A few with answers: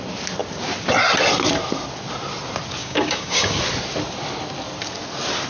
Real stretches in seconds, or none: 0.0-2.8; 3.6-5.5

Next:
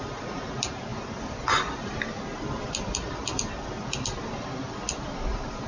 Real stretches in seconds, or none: 0.0-5.7

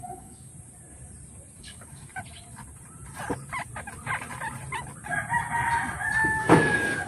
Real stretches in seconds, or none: 0.5-1.6; 2.1-6.4

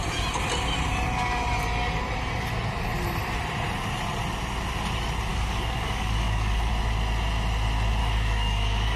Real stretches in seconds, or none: 0.0-5.3; 6.7-8.0

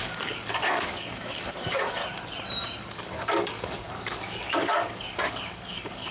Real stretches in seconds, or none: 2.0-2.8

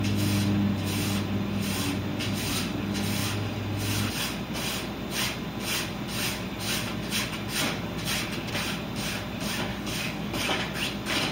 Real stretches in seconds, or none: 0.0-9.7; 10.6-11.3